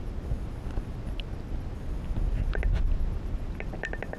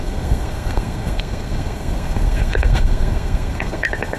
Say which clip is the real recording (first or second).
first